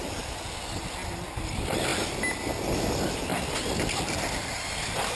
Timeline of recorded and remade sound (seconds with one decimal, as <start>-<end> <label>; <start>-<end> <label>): 0.0-5.1 recorded